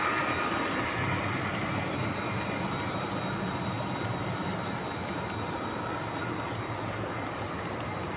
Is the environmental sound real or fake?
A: real